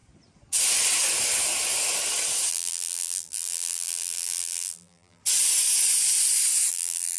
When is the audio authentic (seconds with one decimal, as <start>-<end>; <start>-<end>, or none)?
0.0-2.5; 5.2-6.7